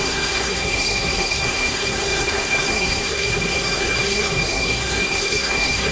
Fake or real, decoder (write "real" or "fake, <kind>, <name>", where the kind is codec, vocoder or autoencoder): fake, codec, SNAC